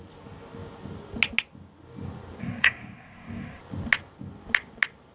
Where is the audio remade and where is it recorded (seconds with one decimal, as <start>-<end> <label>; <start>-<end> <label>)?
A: 0.0-2.4 recorded; 2.4-3.6 remade; 3.6-5.1 recorded